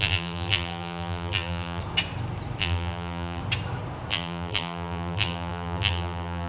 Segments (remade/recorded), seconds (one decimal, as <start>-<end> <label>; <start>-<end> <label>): 0.0-1.8 remade; 1.8-2.6 recorded; 2.6-3.4 remade; 3.4-4.1 recorded; 4.1-6.5 remade